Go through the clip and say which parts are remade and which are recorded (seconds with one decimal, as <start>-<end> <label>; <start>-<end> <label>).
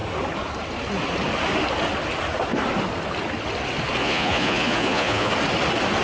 0.0-4.0 recorded; 4.0-5.3 remade; 5.3-6.0 recorded